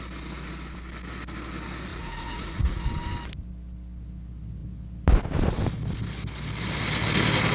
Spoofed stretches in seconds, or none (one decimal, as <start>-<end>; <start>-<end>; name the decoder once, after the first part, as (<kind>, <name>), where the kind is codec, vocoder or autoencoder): 1.9-2.9 (vocoder, Vocos)